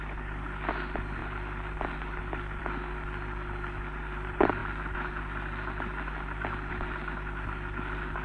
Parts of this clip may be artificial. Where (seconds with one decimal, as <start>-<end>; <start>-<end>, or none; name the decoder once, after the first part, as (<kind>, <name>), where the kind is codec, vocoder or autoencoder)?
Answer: none